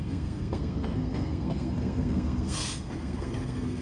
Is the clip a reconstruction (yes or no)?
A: yes